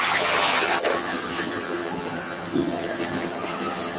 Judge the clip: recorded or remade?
remade